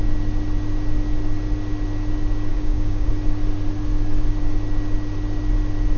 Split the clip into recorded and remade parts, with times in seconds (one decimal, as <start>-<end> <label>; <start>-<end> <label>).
0.0-2.5 recorded; 2.5-3.1 remade; 3.1-6.0 recorded